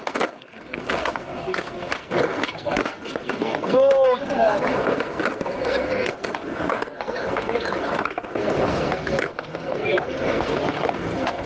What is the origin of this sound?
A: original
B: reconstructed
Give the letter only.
B